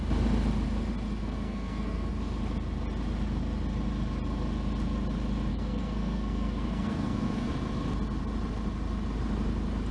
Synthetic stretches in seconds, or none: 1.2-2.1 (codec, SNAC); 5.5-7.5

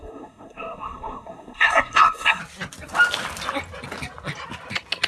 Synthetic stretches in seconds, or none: 0.0-2.4 (codec, SNAC)

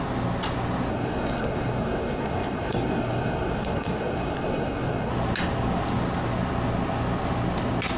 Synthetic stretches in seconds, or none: 0.9-5.1 (codec, SNAC)

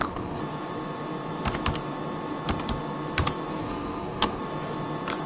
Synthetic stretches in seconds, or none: 0.0-0.4 (codec, SNAC); 3.6-4.4

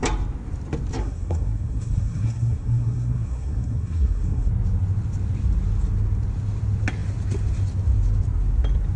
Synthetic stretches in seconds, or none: 1.0-4.5 (codec, SNAC)